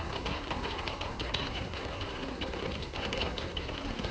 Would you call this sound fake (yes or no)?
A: yes